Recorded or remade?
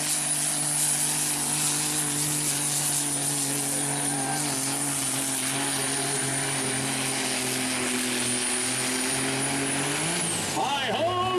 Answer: recorded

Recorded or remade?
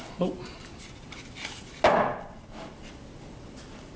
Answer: recorded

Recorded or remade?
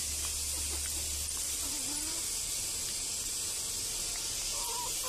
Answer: recorded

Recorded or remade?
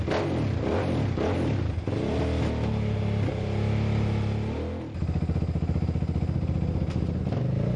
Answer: recorded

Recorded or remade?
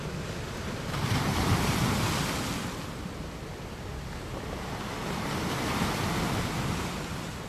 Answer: recorded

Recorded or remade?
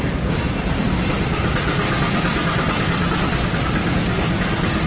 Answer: recorded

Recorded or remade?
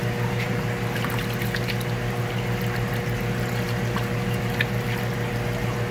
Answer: recorded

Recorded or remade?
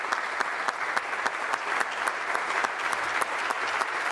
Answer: recorded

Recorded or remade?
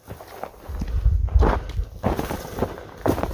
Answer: recorded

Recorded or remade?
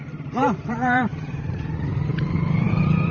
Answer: remade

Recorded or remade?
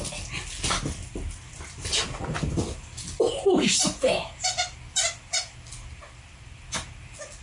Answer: recorded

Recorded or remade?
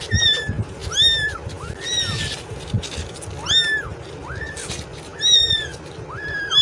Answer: recorded